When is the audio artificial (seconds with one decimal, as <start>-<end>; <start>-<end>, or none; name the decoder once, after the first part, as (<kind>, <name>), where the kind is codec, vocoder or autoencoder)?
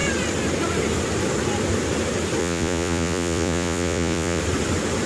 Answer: 2.4-4.4 (vocoder, Vocos)